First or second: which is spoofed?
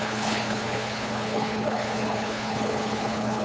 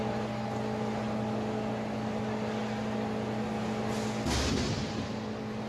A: first